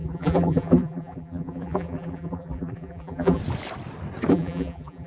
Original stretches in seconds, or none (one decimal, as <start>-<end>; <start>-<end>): 3.4-4.3